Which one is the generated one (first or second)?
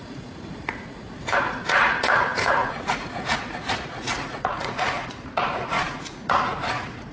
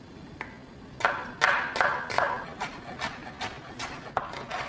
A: first